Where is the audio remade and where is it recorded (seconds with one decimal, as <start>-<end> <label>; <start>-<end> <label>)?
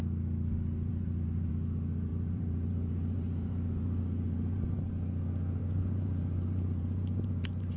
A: 0.0-0.9 recorded; 0.9-1.5 remade; 1.5-2.1 recorded; 2.1-4.9 remade; 4.9-5.6 recorded; 5.6-7.8 remade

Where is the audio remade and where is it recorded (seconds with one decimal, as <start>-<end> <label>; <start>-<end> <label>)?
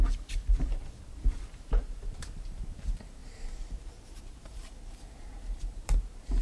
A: 0.0-3.2 remade; 3.2-4.2 recorded; 4.2-6.4 remade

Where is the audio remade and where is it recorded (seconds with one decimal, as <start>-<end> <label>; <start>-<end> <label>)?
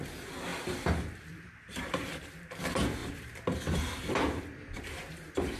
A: 0.0-0.5 recorded; 0.5-2.0 remade; 2.0-5.6 recorded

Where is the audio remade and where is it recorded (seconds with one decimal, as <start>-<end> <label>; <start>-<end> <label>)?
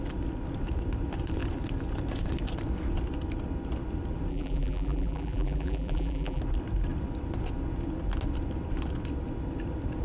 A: 0.0-4.3 recorded; 4.3-6.4 remade; 6.4-10.0 recorded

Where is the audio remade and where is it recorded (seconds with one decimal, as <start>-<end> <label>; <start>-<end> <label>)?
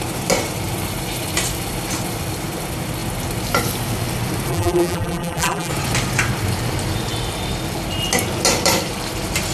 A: 0.0-4.5 recorded; 4.5-5.7 remade; 5.7-9.5 recorded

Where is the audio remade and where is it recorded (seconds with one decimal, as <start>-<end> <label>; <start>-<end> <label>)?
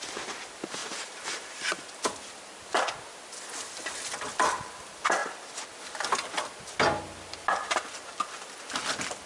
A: 0.0-0.8 recorded; 0.8-2.0 remade; 2.0-9.3 recorded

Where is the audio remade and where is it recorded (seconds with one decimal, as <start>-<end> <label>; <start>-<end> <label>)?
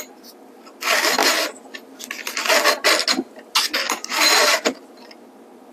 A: 0.0-5.7 recorded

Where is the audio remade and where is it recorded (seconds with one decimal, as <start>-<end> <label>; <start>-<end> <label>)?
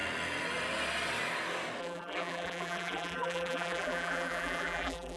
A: 0.0-1.8 recorded; 1.8-5.2 remade